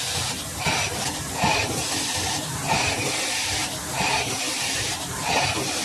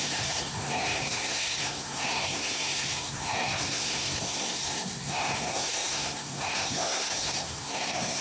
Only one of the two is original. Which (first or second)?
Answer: first